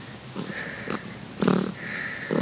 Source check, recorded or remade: recorded